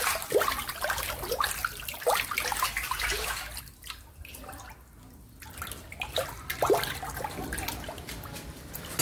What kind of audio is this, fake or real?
real